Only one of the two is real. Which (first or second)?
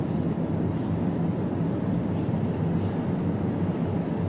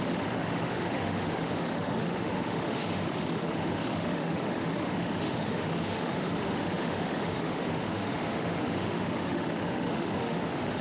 first